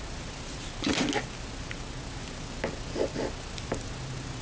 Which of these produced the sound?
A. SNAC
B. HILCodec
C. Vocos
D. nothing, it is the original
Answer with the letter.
D